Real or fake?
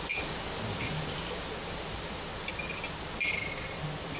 real